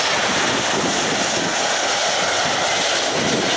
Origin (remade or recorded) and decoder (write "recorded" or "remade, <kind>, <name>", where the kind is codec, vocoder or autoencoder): recorded